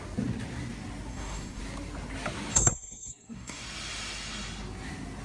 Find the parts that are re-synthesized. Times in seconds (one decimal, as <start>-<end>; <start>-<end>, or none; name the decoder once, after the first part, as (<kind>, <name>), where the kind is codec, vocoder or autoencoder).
1.1-1.6 (codec, SNAC); 2.5-3.6